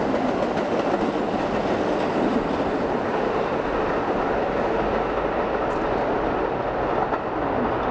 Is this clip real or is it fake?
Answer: real